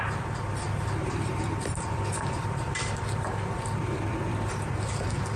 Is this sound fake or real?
fake